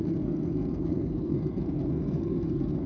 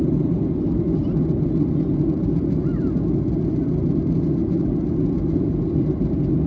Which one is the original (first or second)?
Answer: second